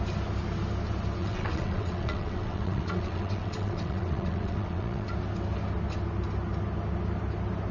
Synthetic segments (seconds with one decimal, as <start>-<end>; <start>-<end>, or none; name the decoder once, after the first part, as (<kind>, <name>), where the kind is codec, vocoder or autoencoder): 1.2-5.1 (vocoder, WaveNeXt)